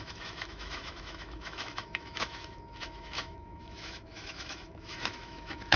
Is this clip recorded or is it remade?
remade